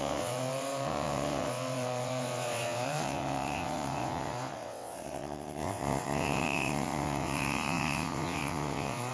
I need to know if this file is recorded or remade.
remade